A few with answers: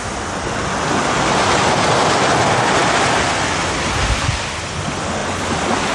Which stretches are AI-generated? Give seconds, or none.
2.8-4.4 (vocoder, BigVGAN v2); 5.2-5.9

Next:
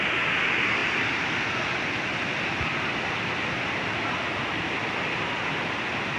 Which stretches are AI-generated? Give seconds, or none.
none

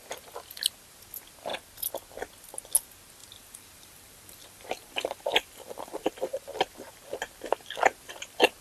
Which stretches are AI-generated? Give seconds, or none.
3.2-6.1 (vocoder, BigVGAN v2)

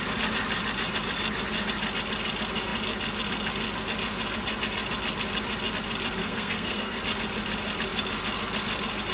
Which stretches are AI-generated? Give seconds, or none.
6.2-7.0 (codec, SNAC)